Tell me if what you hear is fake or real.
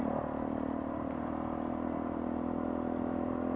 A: real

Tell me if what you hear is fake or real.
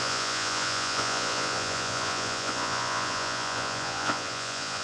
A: fake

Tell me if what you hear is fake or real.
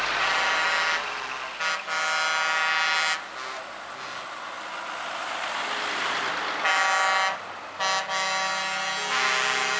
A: real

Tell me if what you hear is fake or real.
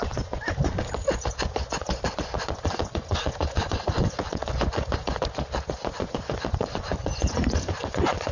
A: fake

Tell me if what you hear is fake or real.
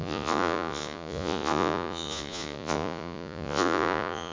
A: fake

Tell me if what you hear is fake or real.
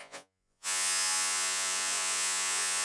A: fake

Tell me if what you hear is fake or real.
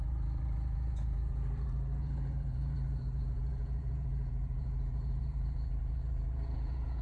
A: fake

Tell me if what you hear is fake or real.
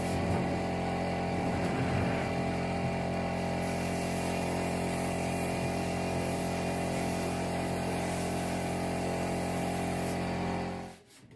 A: real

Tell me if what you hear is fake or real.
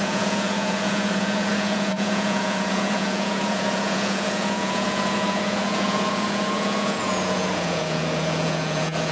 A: fake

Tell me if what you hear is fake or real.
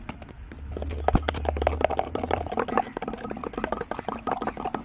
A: real